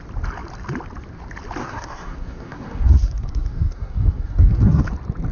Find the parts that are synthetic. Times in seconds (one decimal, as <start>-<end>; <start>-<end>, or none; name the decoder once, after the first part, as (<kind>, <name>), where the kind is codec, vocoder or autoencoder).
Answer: 1.6-4.8 (codec, SNAC)